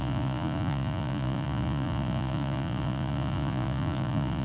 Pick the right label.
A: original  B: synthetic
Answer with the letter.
B